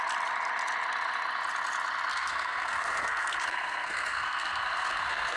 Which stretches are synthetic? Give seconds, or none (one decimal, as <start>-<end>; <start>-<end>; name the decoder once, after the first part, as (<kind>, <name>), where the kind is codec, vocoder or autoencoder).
2.1-5.4 (codec, SNAC)